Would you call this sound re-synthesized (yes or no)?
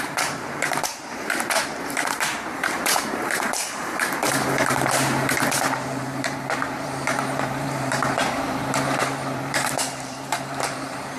yes